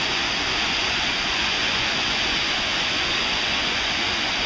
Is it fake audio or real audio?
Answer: fake